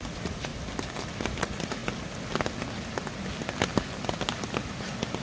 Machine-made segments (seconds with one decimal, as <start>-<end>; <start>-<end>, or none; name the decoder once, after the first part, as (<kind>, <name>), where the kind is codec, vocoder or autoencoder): 0.0-0.5 (vocoder, Vocos); 1.4-1.8